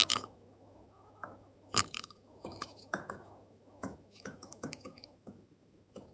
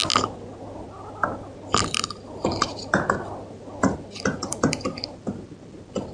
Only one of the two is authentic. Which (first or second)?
second